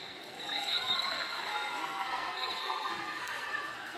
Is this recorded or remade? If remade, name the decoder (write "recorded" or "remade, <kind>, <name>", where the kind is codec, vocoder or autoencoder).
remade, codec, SNAC